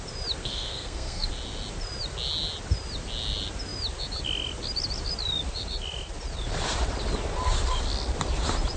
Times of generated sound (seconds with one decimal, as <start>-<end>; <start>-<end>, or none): 0.4-1.3